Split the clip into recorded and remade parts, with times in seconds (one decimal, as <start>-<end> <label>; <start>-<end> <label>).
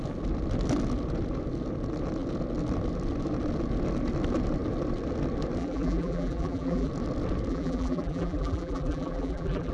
0.0-5.6 recorded; 5.6-6.9 remade; 6.9-7.5 recorded; 7.5-9.7 remade